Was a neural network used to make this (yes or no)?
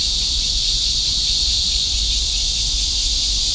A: yes